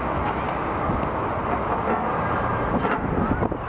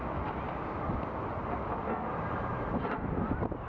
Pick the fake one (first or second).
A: second